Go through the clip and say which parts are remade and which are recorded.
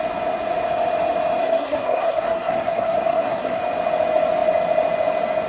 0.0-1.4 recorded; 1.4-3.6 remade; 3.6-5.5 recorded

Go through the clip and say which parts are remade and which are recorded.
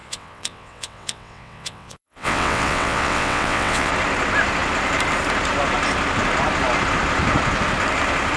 0.0-3.9 remade; 3.9-8.4 recorded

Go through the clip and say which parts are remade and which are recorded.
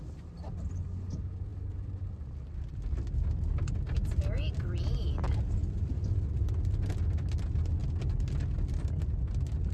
0.0-9.7 recorded